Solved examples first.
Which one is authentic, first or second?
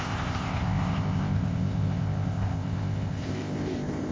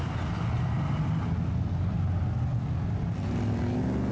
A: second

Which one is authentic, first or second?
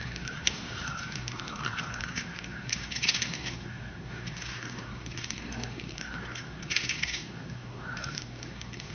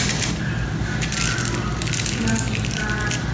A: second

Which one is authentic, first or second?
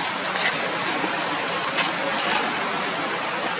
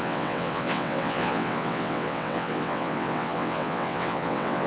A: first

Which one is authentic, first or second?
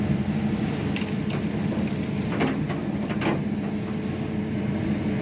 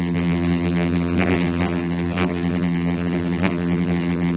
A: first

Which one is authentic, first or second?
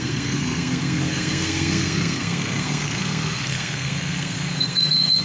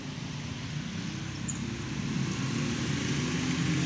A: second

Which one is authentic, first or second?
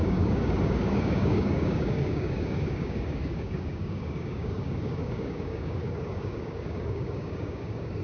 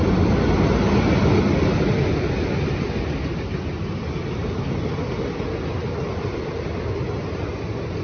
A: second